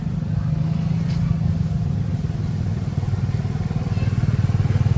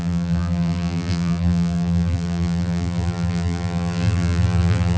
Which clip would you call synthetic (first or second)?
second